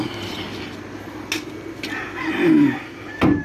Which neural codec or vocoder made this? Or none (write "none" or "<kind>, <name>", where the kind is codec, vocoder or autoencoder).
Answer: none